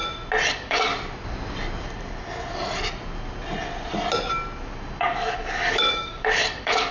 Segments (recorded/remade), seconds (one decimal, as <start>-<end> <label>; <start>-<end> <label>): 0.0-0.5 recorded; 0.5-0.9 remade; 0.9-5.0 recorded; 5.0-6.9 remade